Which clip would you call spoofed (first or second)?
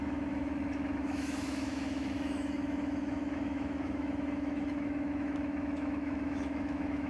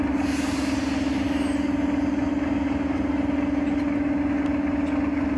first